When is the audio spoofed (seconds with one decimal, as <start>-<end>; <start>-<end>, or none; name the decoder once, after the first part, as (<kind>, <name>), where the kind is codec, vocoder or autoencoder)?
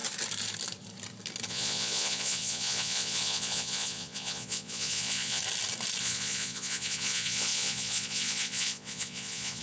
1.5-5.4 (vocoder, Vocos); 6.0-9.6